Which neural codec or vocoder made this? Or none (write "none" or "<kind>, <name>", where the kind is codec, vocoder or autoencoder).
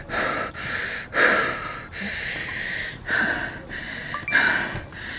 none